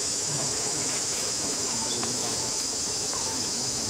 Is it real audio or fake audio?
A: fake